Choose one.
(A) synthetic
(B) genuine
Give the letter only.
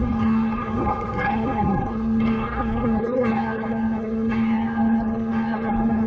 A